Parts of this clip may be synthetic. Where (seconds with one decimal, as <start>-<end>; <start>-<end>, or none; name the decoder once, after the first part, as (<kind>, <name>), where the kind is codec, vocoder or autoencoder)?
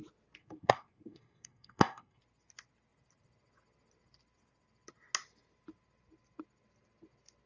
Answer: 0.4-2.2 (codec, SNAC)